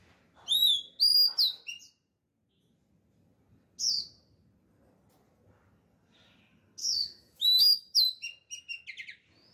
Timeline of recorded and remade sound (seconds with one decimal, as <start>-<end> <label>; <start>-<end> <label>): 0.0-6.8 recorded; 6.8-8.0 remade; 8.0-9.5 recorded